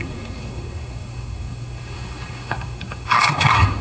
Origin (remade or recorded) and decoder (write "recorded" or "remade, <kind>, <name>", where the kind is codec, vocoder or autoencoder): remade, codec, SNAC